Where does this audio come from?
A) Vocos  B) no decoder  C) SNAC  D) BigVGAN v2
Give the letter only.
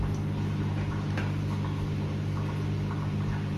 B